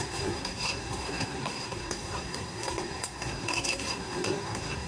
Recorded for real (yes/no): no